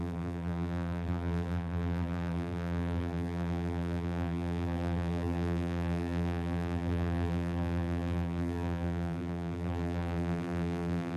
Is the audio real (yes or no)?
no